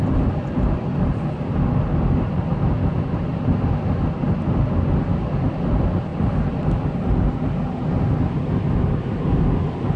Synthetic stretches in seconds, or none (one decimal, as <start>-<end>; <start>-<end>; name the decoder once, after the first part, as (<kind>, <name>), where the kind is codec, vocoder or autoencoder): none